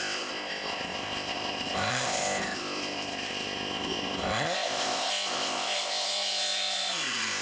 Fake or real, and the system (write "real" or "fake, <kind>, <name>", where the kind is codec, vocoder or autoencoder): fake, codec, ZipCodec